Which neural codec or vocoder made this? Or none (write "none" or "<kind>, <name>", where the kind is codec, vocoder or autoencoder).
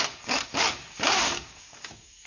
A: codec, DAC